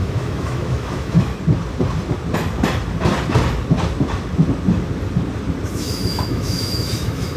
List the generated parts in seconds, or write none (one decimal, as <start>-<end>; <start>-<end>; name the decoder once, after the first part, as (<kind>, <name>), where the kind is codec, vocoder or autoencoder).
0.0-1.3 (autoencoder, DAC-VAE); 5.7-7.4